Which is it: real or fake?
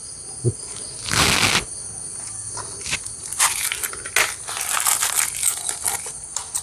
real